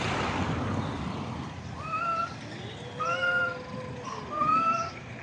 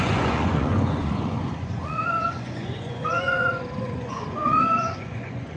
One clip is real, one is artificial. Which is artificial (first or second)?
second